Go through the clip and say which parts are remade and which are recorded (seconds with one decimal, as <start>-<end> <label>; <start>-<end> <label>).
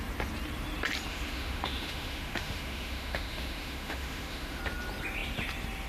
0.0-1.1 recorded; 1.1-4.6 remade; 4.6-5.9 recorded